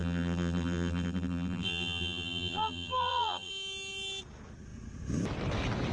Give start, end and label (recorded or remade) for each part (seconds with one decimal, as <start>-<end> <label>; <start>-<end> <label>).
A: 0.0-3.5 remade; 3.5-5.9 recorded